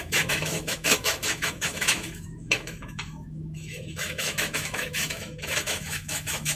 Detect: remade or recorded remade